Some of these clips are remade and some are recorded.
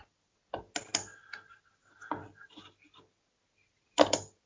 recorded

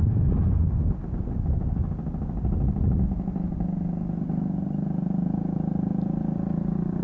recorded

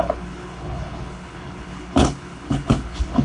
remade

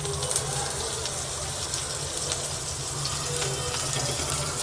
recorded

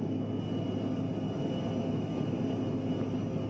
recorded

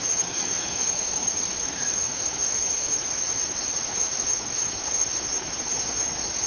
remade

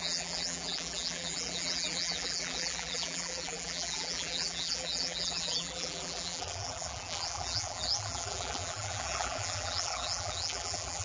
remade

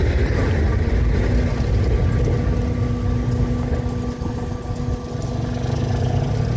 recorded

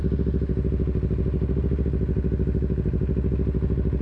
recorded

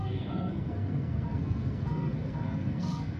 remade